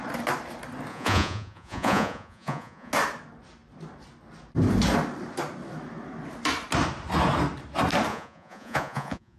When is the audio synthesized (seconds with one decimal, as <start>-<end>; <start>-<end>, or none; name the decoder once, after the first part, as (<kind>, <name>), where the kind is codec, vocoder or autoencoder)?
0.9-2.9 (vocoder, Vocos); 8.1-9.4